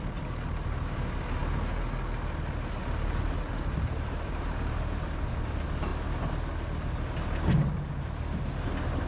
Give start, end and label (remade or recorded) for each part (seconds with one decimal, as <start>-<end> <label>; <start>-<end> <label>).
0.0-9.1 recorded